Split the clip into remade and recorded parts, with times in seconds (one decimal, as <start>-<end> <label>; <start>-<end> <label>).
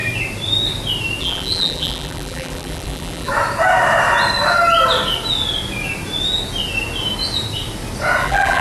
0.0-1.2 recorded; 1.2-3.3 remade; 3.3-8.2 recorded; 8.2-8.6 remade